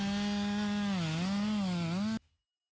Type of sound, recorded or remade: recorded